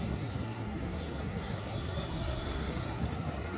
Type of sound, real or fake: fake